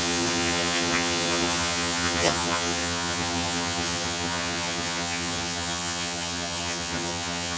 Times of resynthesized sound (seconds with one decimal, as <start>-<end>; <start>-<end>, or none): 0.0-7.6